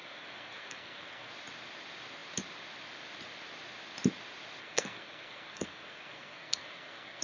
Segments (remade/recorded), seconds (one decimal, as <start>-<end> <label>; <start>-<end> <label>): 0.0-1.3 remade; 1.3-4.6 recorded; 4.6-7.2 remade